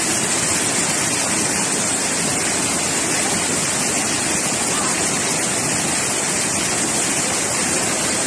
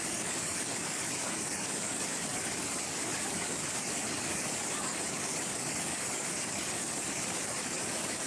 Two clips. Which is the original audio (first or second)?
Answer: first